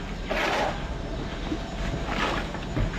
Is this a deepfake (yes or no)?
no